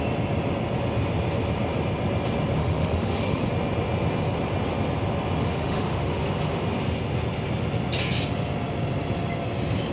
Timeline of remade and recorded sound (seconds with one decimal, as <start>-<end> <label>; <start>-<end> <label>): 0.0-2.6 recorded; 2.6-3.5 remade; 3.5-5.4 recorded; 5.4-6.2 remade; 6.2-9.9 recorded